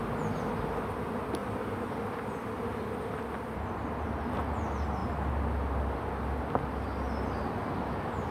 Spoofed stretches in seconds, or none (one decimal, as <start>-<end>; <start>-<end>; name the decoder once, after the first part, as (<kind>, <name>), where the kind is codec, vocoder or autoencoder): 1.4-2.0 (vocoder, BigVGAN v2); 5.0-6.1